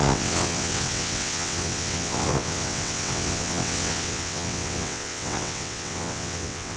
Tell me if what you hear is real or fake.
fake